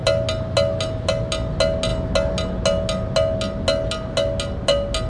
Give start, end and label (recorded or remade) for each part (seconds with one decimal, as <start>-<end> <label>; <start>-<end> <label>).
0.0-5.1 recorded